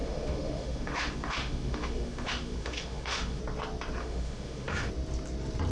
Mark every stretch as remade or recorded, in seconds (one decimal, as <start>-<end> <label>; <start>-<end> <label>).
0.0-3.4 remade; 3.4-4.0 recorded; 4.0-4.9 remade; 4.9-5.7 recorded